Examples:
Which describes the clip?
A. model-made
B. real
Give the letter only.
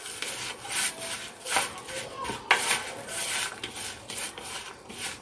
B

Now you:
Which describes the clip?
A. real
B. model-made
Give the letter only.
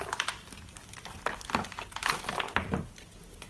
A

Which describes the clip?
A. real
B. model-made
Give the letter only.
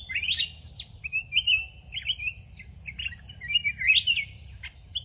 A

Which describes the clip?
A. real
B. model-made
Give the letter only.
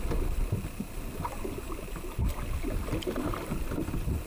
A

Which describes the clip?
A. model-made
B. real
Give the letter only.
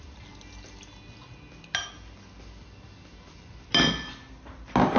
B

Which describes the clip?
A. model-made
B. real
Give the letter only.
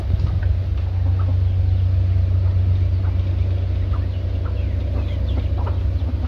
B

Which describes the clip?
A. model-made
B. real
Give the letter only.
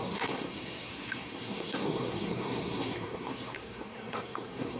A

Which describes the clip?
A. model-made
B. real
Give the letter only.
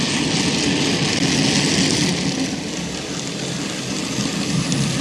B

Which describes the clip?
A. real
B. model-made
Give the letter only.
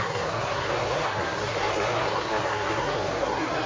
B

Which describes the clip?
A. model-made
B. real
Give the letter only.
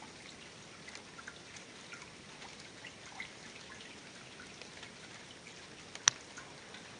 B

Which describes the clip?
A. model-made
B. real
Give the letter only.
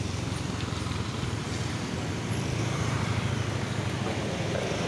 A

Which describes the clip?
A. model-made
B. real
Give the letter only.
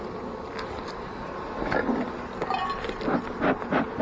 B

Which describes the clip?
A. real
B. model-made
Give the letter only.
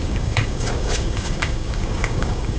B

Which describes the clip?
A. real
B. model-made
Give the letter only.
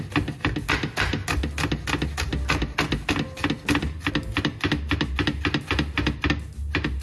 A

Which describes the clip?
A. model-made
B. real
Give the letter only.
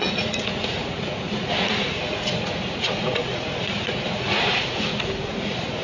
A